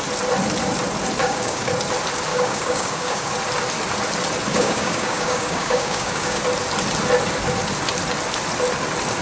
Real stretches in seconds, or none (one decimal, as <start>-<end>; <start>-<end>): 0.0-1.2; 1.7-2.3; 3.3-4.5; 6.4-9.2